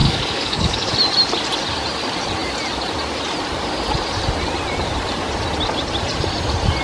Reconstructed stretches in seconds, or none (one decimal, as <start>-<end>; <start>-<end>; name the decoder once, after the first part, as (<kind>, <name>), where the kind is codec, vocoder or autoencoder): 0.0-0.9 (codec, DAC)